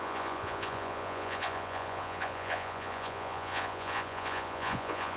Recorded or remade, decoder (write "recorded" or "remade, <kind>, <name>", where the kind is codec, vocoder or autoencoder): remade, vocoder, Vocos